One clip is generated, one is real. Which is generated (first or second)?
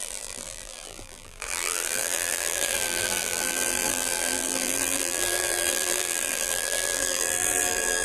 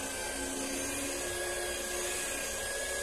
first